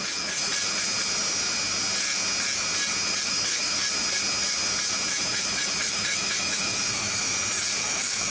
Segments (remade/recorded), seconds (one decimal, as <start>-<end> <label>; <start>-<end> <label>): 0.0-0.5 remade; 0.5-3.3 recorded; 3.3-3.8 remade; 3.8-5.1 recorded; 5.1-7.3 remade; 7.3-7.8 recorded; 7.8-8.3 remade